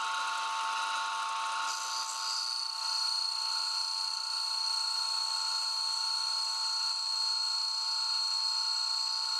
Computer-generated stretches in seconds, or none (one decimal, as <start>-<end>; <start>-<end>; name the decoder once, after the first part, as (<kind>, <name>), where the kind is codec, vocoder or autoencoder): none